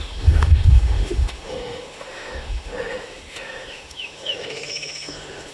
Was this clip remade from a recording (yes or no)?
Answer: yes